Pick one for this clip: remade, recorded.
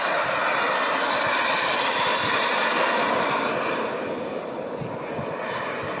recorded